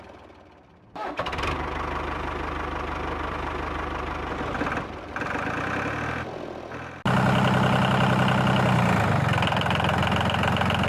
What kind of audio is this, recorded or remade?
recorded